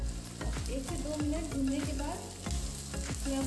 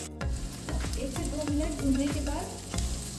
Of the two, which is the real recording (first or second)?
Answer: first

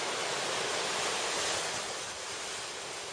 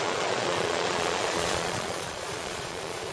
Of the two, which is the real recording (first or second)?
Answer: first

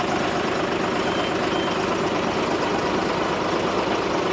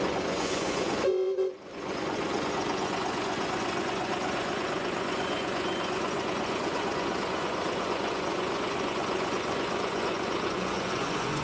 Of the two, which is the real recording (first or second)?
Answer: first